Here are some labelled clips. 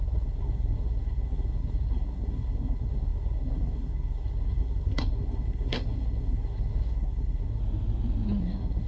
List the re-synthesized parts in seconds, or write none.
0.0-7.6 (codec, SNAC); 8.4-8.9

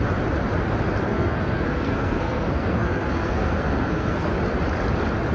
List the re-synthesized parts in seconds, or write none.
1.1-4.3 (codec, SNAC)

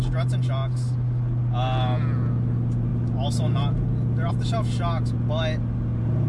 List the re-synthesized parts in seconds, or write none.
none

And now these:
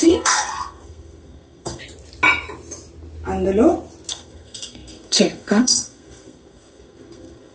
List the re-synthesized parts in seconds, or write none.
0.0-1.8 (codec, SNAC); 4.1-7.5

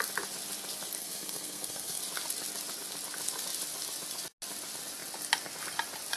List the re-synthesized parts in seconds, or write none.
1.0-2.0 (codec, SNAC)

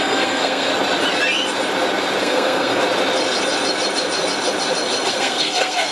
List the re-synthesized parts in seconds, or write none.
0.0-0.7 (codec, SNAC); 2.2-2.8; 5.1-5.9